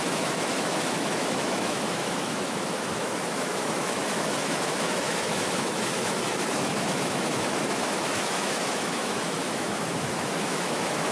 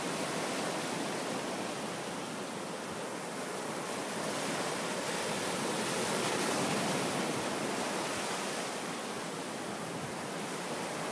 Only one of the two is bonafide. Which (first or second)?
second